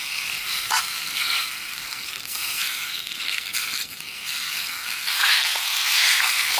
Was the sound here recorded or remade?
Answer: remade